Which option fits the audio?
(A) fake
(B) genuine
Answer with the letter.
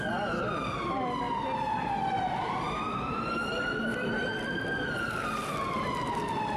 B